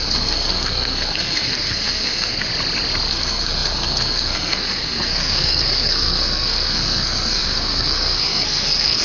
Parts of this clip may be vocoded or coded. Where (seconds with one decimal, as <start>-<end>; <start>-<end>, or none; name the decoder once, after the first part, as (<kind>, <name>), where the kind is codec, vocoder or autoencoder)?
0.0-2.5 (codec, SNAC); 3.1-9.0